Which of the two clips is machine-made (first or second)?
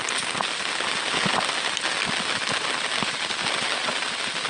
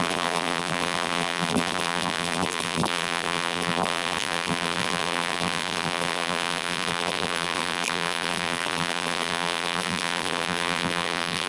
second